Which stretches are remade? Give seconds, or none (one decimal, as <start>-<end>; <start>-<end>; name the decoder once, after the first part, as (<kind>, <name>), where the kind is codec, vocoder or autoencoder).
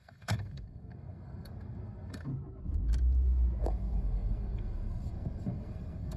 0.0-2.3 (codec, SNAC); 3.6-6.2